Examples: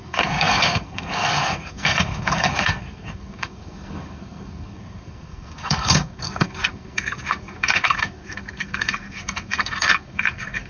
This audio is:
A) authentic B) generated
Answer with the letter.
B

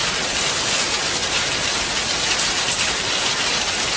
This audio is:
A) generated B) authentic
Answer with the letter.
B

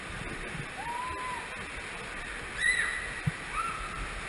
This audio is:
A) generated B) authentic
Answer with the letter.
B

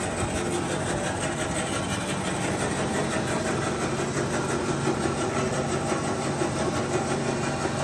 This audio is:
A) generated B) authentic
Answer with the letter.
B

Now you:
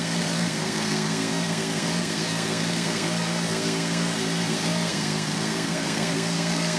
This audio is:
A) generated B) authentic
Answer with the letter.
A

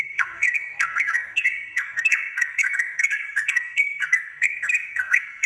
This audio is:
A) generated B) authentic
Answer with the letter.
A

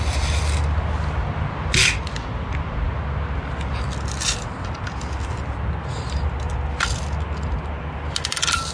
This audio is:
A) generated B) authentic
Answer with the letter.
B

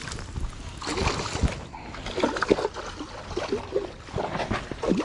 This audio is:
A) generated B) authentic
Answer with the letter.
B